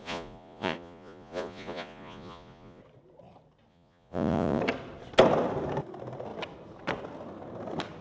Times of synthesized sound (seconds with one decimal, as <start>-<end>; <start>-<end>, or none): 0.0-2.8; 3.7-4.6